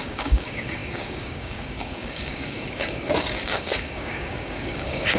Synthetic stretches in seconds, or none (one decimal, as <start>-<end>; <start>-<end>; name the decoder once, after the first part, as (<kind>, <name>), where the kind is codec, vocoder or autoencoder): 0.0-5.2 (codec, DAC)